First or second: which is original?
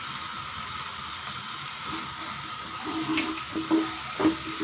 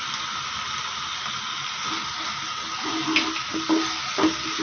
second